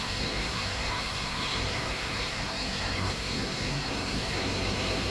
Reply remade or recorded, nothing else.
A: remade